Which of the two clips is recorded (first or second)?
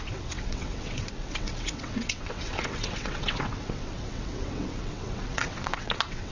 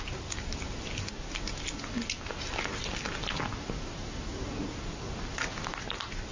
second